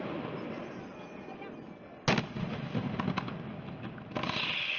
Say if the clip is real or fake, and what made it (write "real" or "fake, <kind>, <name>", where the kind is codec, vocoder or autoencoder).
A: real